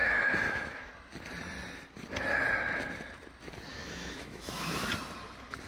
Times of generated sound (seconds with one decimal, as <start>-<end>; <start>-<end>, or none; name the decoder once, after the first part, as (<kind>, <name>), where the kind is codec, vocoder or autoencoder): 0.0-0.9 (autoencoder, DAC-VAE); 3.7-4.9